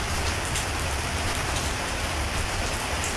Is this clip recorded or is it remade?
recorded